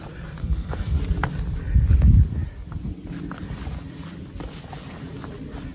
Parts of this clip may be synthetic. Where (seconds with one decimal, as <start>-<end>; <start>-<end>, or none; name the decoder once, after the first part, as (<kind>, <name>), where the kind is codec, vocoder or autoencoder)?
0.4-1.0 (codec, SNAC)